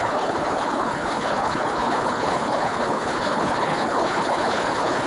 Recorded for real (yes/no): no